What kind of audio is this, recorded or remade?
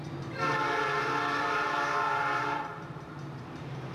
remade